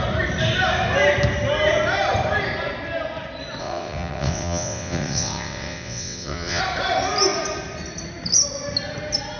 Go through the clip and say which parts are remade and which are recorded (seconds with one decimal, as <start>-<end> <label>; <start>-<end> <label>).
0.0-3.6 recorded; 3.6-6.6 remade; 6.6-9.4 recorded